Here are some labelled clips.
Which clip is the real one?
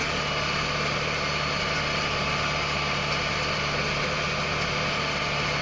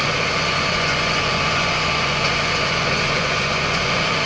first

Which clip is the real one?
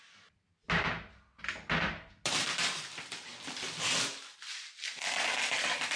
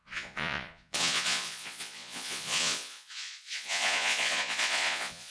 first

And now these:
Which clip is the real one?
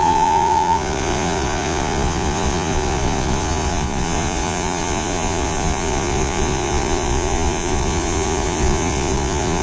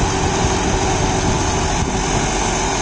second